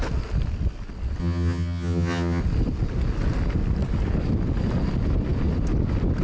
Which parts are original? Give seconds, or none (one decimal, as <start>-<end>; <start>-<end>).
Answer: 0.0-1.2; 2.4-6.2